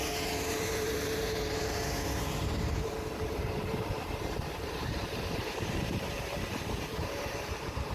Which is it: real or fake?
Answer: fake